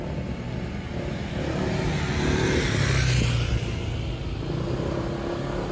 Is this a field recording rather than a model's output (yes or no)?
yes